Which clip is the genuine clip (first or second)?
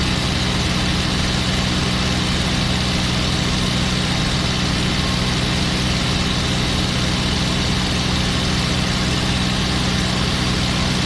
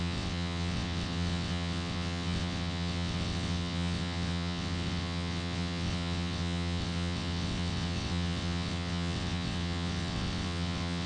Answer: first